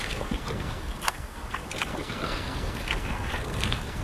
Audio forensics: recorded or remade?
remade